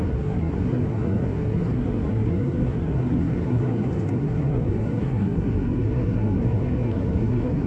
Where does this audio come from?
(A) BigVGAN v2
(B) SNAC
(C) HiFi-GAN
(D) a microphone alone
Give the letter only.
B